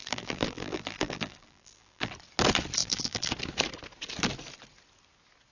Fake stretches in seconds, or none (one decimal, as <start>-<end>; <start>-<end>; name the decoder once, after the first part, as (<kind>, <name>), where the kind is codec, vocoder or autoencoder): 0.0-2.1 (vocoder, BigVGAN v2); 2.8-3.3